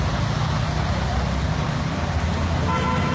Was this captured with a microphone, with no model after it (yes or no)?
yes